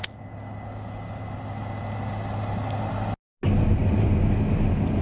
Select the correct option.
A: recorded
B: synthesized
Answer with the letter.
A